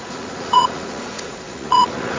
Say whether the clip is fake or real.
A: fake